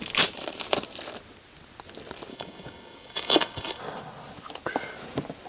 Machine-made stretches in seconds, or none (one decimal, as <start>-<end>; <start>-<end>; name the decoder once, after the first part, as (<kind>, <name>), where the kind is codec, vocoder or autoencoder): 2.3-3.8 (codec, DAC)